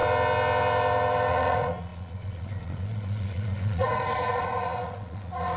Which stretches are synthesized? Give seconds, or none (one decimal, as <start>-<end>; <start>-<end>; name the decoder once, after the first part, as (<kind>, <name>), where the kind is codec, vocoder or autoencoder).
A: 1.3-5.6 (vocoder, Vocos)